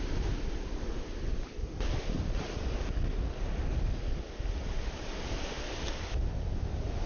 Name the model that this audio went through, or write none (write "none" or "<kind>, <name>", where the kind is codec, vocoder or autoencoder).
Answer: none